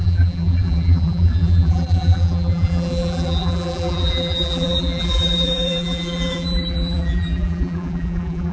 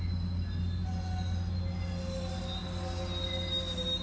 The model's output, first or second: first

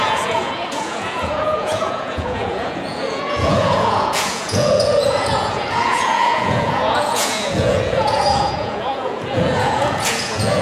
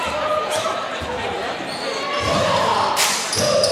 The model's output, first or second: first